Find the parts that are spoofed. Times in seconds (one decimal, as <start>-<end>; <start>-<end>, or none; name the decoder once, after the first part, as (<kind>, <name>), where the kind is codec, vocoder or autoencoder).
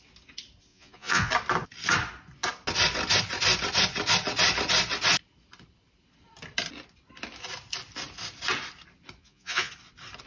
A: 0.7-1.3 (vocoder, Vocos); 9.2-9.7